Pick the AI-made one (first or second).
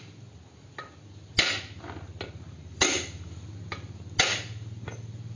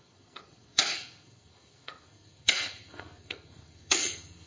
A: second